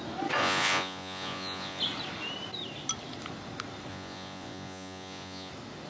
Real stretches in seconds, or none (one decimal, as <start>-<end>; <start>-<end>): 0.0-0.4; 1.8-3.9; 5.5-5.9

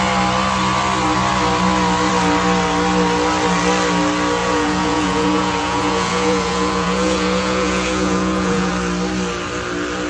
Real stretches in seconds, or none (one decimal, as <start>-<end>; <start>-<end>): 0.0-4.4; 8.7-10.1

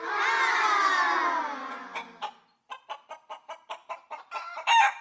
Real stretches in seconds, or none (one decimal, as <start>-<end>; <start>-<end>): 0.0-5.0

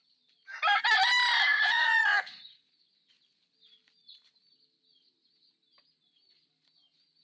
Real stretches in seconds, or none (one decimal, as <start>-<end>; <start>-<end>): 0.0-1.5; 2.7-7.2

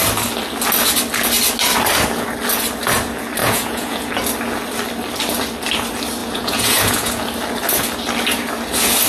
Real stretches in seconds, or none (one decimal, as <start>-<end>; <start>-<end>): 0.0-3.4; 4.1-6.2; 7.1-9.1

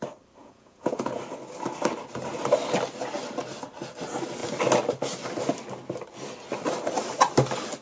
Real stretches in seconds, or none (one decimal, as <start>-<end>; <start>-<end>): 0.0-0.4; 1.2-7.8

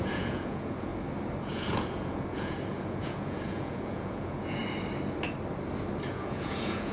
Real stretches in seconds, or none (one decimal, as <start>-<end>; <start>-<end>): 0.9-1.5; 4.6-6.1